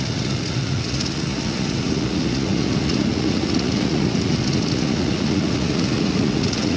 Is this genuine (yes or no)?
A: no